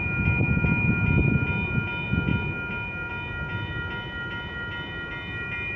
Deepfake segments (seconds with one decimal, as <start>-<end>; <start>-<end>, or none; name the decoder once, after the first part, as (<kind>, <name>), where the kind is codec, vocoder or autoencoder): none